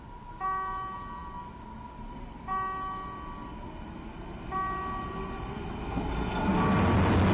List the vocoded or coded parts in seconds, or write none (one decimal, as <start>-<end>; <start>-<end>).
none